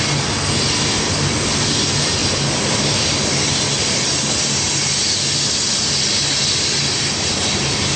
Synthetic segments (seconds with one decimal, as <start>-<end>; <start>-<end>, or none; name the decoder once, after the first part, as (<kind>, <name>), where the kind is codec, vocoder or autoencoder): none